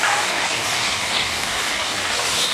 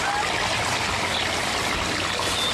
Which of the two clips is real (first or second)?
second